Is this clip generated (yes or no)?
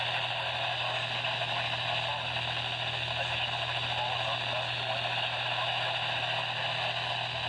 no